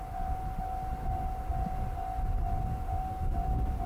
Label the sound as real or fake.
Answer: real